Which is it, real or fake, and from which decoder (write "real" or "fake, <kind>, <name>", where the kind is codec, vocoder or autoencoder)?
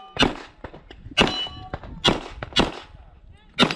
real